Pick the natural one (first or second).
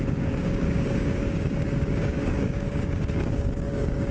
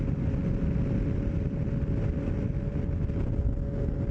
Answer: second